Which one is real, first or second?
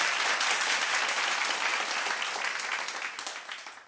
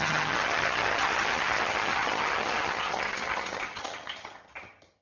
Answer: first